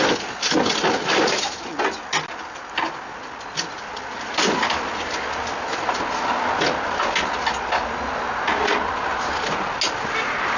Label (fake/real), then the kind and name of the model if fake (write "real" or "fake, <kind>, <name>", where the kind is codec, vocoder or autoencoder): real